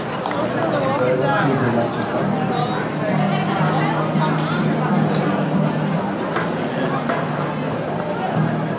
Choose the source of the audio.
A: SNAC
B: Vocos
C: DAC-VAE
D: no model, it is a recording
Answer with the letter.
D